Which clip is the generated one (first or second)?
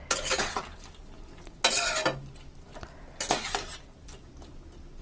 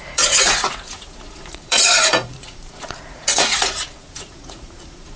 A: second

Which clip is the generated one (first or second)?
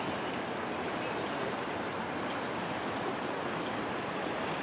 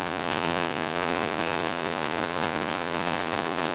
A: second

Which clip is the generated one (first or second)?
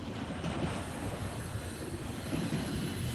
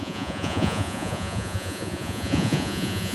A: second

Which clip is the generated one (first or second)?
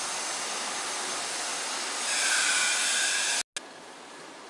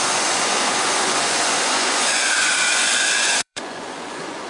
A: second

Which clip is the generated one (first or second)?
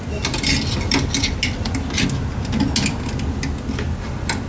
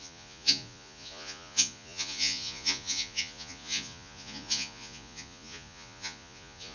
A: second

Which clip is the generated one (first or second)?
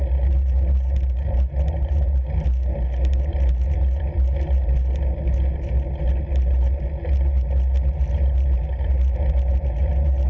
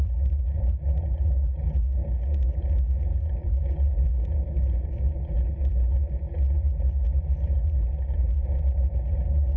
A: second